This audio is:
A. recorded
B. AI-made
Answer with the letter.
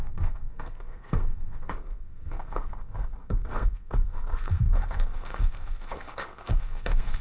B